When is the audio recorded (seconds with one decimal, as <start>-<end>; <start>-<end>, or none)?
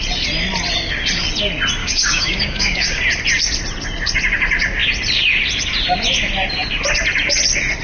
0.0-1.8; 3.0-7.8